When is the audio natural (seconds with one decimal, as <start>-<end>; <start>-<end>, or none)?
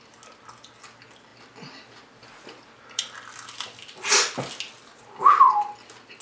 0.0-6.2